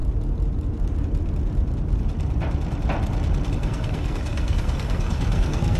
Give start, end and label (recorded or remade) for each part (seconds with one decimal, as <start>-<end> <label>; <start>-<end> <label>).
0.0-3.5 recorded; 3.5-5.8 remade